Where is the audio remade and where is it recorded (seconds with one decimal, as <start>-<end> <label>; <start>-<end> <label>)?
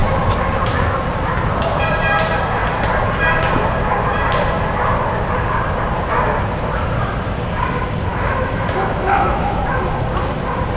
0.0-8.1 recorded; 8.1-9.6 remade; 9.6-10.8 recorded